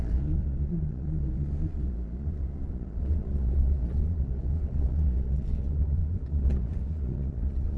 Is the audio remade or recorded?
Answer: remade